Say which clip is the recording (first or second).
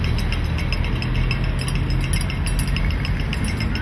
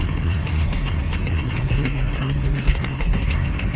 first